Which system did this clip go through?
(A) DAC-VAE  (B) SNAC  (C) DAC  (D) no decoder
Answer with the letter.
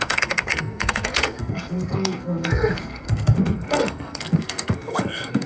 B